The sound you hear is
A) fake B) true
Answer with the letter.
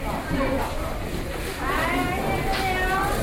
B